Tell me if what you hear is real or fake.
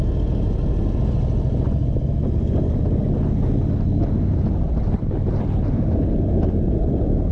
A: real